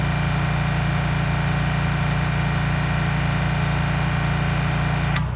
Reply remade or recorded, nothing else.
recorded